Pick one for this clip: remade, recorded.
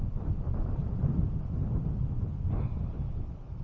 recorded